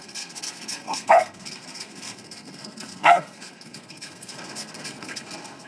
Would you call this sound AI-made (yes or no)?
yes